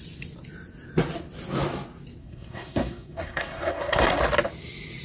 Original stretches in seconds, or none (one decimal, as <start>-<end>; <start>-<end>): 0.0-2.2; 4.2-5.0